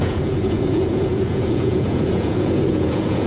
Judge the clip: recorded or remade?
remade